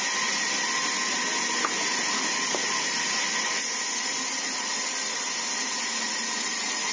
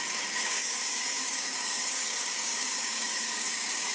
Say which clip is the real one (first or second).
first